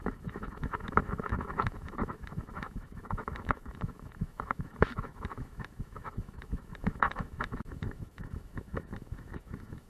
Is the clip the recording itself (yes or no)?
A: no